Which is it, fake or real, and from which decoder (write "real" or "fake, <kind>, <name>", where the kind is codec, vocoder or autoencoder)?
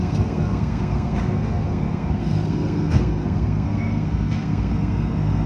fake, codec, SNAC